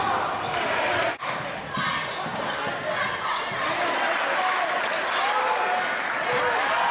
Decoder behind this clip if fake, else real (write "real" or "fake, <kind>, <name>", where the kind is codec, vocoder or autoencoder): real